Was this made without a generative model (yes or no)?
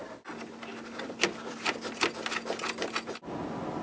yes